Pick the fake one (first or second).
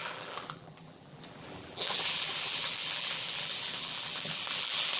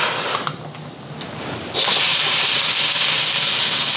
first